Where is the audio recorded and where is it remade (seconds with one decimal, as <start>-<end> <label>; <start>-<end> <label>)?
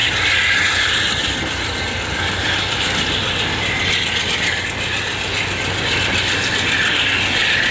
0.0-7.7 recorded